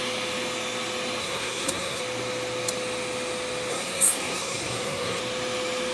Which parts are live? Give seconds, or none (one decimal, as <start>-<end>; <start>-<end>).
0.0-1.2; 2.0-3.7; 5.2-5.9